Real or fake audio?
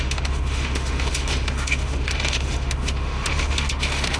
fake